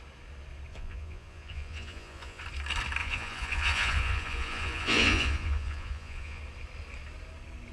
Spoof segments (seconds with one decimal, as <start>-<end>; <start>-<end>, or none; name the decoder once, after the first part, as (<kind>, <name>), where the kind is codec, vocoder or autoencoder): 0.7-2.4 (vocoder, Vocos); 3.0-6.4

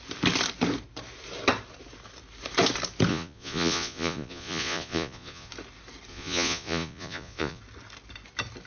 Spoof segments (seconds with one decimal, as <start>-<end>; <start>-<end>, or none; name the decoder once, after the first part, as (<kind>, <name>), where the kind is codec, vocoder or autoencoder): 3.1-5.5 (vocoder, Vocos); 6.1-7.6

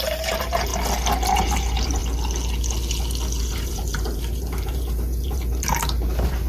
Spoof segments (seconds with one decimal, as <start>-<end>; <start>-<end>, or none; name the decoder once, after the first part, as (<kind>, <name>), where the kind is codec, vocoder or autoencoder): 0.0-0.7 (vocoder, BigVGAN v2); 1.3-2.0; 3.4-6.5

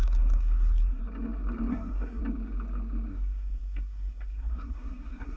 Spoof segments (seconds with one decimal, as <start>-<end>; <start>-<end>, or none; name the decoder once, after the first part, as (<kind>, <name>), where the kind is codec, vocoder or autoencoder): 0.0-1.0 (codec, SNAC); 1.7-2.2; 3.1-5.4

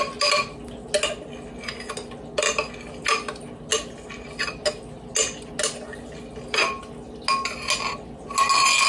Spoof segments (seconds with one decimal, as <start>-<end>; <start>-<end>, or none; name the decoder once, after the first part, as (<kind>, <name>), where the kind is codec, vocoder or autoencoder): none